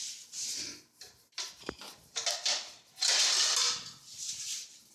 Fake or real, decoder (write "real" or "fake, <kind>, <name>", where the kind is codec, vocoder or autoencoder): real